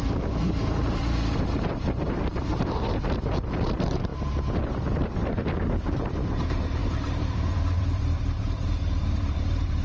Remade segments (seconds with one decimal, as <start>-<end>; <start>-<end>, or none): 0.0-4.1; 4.7-5.4; 6.1-9.8